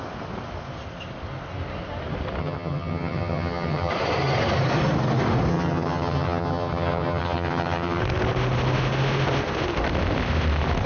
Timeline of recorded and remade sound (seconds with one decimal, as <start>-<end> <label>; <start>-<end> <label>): 0.0-2.4 recorded; 2.4-3.9 remade; 3.9-5.5 recorded; 5.5-8.0 remade; 8.0-10.9 recorded